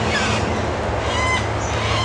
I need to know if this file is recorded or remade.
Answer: recorded